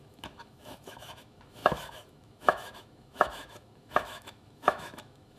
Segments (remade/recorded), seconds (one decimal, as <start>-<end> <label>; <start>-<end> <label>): 0.0-5.4 remade